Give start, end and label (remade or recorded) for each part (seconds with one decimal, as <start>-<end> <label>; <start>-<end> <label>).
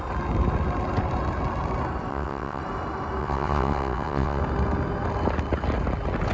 0.0-2.1 recorded; 2.1-2.6 remade; 2.6-3.2 recorded; 3.2-4.4 remade; 4.4-6.3 recorded